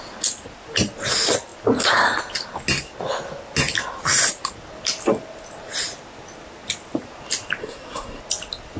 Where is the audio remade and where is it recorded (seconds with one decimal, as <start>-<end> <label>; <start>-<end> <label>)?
0.0-7.6 recorded; 7.6-8.2 remade; 8.2-8.8 recorded